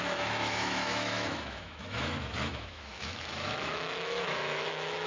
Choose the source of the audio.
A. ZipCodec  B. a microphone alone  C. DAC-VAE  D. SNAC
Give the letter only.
C